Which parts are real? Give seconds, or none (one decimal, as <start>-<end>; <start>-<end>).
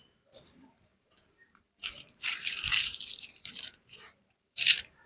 none